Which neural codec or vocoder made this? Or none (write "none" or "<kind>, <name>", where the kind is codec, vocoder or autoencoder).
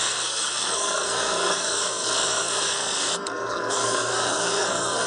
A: codec, SNAC